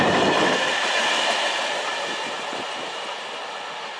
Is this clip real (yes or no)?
yes